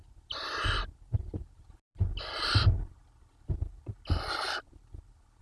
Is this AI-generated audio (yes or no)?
no